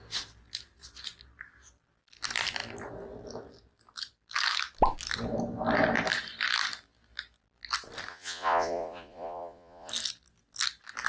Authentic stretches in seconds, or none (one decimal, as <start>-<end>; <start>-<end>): 0.0-8.1; 9.9-11.1